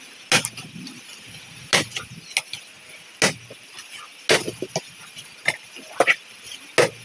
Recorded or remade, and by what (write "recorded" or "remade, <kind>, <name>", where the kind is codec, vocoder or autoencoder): recorded